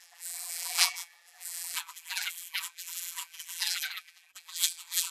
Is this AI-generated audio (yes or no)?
yes